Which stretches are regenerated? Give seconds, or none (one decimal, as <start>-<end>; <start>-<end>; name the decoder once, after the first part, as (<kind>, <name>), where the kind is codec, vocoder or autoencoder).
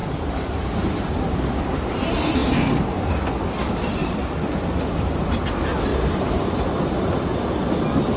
0.0-1.7 (vocoder, BigVGAN v2); 2.4-3.1; 4.0-5.4; 5.9-6.8